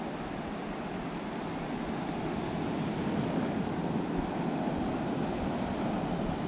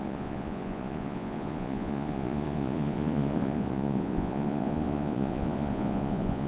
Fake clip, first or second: second